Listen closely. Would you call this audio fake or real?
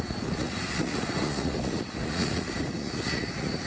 fake